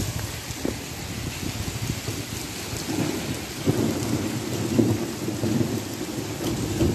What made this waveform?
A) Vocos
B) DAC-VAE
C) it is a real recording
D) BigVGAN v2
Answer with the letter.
C